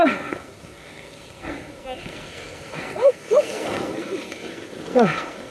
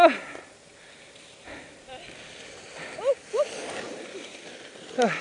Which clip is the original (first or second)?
second